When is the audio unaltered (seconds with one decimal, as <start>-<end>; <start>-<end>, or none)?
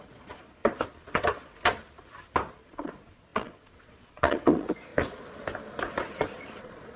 0.6-2.6; 4.9-6.4